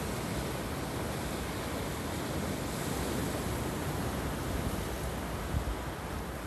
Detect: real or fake real